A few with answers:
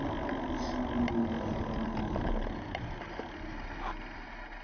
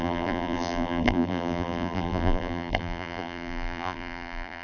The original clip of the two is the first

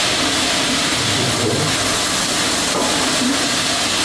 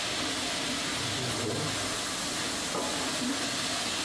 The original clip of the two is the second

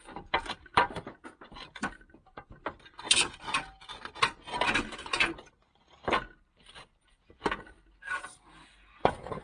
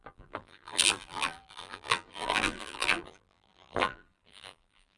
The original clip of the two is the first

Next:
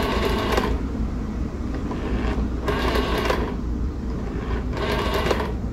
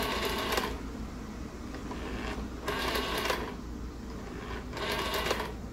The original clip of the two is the second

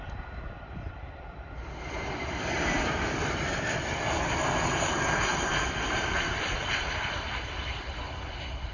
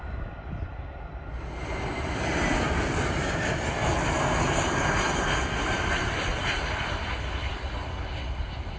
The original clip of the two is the second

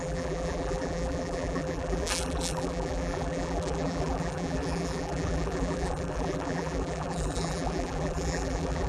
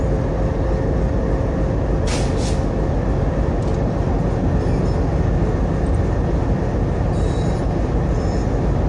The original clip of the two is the second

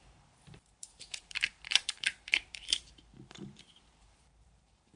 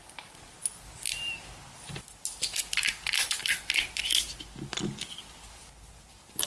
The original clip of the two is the second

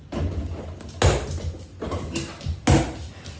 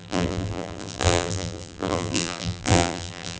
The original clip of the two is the first